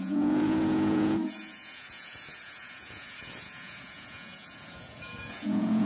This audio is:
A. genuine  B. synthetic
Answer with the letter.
B